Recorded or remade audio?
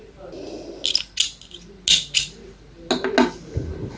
recorded